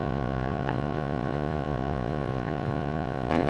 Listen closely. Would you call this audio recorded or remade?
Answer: remade